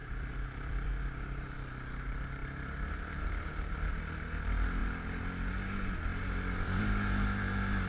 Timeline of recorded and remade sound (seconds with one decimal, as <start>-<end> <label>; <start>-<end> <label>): 0.0-1.1 remade; 1.1-2.4 recorded; 2.4-4.0 remade; 4.0-6.1 recorded; 6.1-6.8 remade; 6.8-7.9 recorded